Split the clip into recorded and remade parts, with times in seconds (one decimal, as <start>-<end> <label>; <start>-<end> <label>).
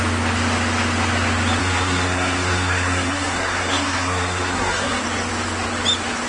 0.0-1.6 recorded; 1.6-5.0 remade; 5.0-6.3 recorded